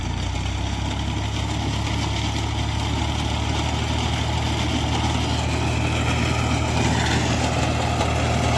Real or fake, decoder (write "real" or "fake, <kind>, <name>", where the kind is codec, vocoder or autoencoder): real